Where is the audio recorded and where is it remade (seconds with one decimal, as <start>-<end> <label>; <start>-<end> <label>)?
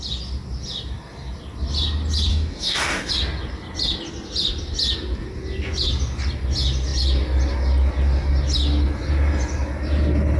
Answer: 0.0-2.3 recorded; 2.3-3.1 remade; 3.1-10.4 recorded